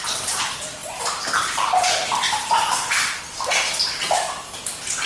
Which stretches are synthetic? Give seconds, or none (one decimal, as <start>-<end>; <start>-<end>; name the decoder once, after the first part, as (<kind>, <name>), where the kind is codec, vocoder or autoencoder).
0.8-3.2 (vocoder, BigVGAN v2)